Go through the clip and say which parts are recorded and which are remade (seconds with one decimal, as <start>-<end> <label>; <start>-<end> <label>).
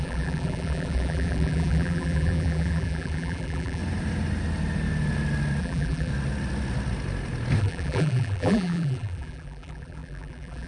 0.0-3.8 remade; 3.8-5.6 recorded; 5.6-6.1 remade; 6.1-7.6 recorded; 7.6-10.7 remade